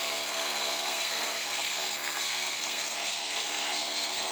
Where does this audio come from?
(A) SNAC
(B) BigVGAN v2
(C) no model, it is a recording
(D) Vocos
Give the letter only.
A